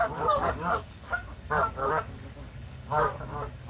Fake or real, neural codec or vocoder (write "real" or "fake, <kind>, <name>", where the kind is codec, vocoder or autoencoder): fake, codec, DAC